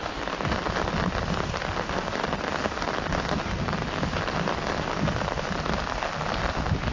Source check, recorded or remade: recorded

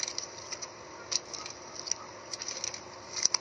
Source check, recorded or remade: recorded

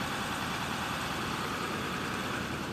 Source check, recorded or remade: remade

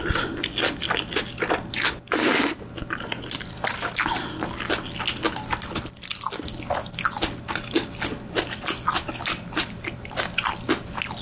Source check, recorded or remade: recorded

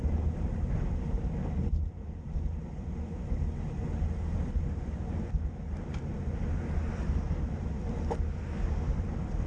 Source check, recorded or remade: recorded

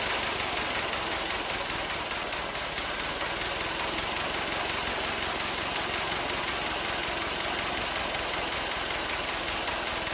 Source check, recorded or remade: recorded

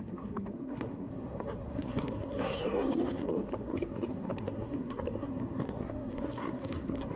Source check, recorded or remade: remade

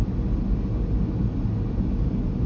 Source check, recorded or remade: recorded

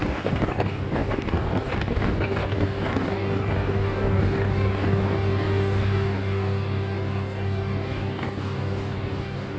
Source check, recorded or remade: remade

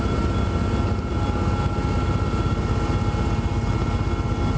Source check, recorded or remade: recorded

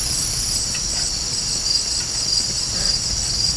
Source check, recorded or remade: recorded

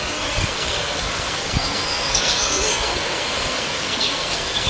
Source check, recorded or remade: remade